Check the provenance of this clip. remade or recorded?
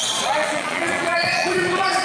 remade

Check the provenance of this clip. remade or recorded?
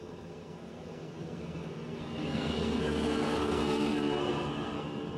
remade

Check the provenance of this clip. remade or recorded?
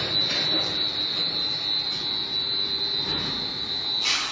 recorded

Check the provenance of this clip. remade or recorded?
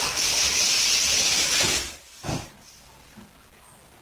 recorded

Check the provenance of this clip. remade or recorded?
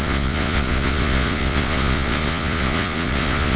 remade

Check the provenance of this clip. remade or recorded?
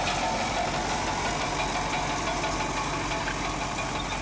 recorded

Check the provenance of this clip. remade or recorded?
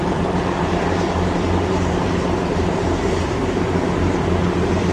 remade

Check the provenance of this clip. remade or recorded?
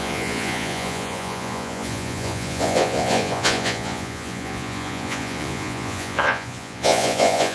remade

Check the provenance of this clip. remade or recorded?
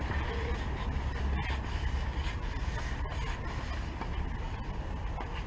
recorded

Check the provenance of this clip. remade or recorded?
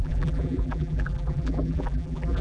remade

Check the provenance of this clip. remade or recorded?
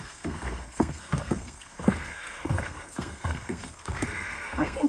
remade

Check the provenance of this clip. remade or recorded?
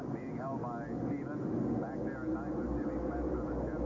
recorded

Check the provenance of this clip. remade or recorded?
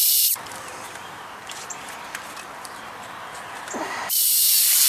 remade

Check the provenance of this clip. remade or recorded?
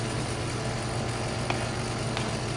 recorded